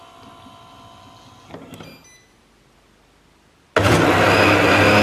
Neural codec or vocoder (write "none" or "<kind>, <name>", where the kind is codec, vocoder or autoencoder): none